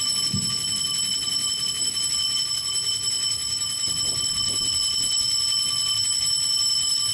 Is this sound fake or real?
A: real